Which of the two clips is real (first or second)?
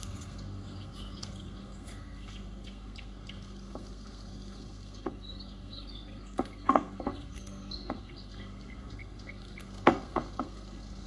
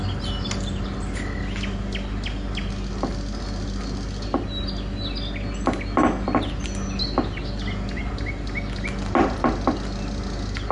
second